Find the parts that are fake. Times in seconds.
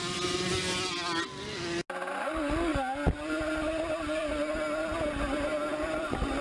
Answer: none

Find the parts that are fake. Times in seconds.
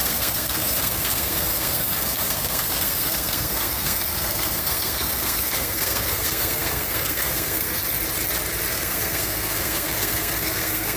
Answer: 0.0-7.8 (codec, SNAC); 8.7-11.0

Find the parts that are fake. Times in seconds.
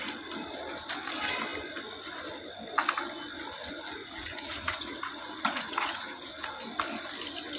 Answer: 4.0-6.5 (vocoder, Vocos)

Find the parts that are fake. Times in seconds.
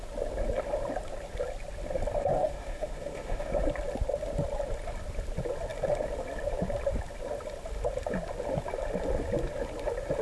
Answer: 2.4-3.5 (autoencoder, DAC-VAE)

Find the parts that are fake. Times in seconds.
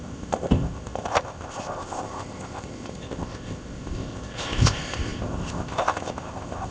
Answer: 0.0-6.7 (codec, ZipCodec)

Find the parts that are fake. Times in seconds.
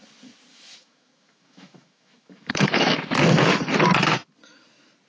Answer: 0.5-3.6 (autoencoder, DAC-VAE)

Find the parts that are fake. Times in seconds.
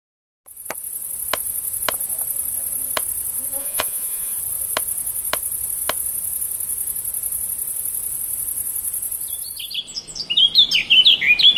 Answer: 3.6-4.4 (vocoder, Vocos)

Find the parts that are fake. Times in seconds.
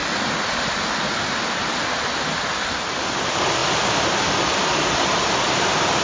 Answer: none